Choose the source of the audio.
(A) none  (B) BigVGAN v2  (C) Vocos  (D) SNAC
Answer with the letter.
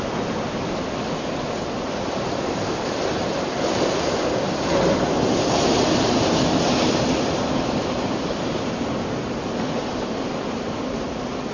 A